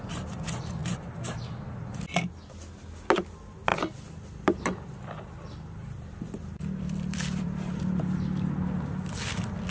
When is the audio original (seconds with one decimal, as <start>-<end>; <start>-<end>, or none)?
0.0-3.7; 7.8-9.7